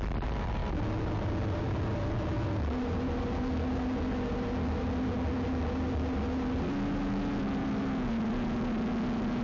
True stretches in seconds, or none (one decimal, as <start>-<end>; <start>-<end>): 0.0-9.4